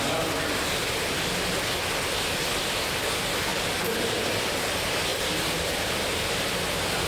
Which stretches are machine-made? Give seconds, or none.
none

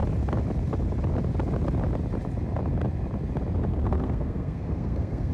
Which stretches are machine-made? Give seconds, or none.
3.7-5.3